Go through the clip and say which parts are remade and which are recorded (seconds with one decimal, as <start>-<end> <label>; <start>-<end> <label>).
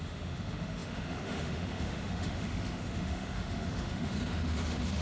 0.0-5.0 remade